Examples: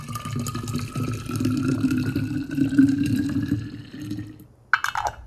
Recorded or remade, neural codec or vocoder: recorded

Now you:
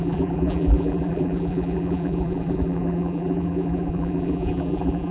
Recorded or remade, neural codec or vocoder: remade, vocoder, BigVGAN v2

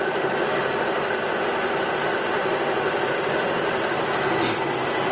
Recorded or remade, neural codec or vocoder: recorded